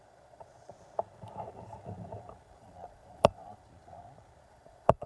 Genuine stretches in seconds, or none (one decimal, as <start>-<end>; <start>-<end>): 0.7-2.6; 3.6-4.4